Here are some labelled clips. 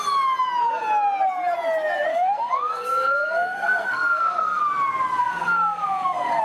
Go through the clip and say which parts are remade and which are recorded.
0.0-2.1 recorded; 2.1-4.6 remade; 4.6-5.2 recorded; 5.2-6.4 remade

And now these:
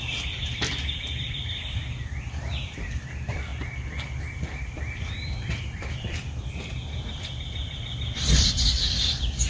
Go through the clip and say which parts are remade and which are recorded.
0.0-3.5 remade; 3.5-4.3 recorded; 4.3-9.5 remade

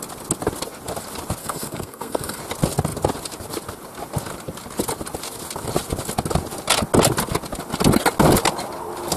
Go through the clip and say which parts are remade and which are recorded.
0.0-1.4 recorded; 1.4-2.4 remade; 2.4-9.2 recorded

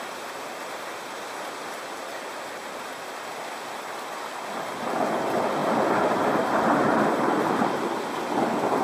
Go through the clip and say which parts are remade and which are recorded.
0.0-8.8 recorded

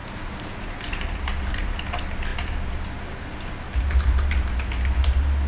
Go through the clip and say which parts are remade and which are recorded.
0.0-1.8 remade; 1.8-5.5 recorded

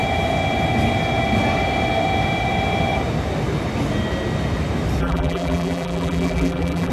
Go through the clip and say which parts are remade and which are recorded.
0.0-5.0 recorded; 5.0-6.9 remade